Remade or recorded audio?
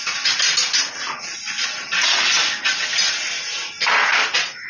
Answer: recorded